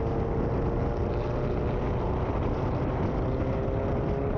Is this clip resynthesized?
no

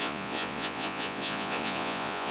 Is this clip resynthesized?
yes